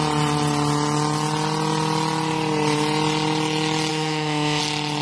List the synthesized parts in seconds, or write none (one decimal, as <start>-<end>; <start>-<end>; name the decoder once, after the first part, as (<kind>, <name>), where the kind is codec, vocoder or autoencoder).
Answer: 3.9-4.6 (autoencoder, DAC-VAE)